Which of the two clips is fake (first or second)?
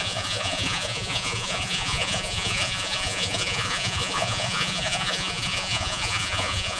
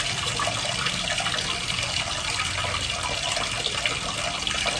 first